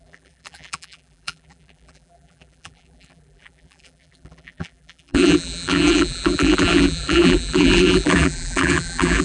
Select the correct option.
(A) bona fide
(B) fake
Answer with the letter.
B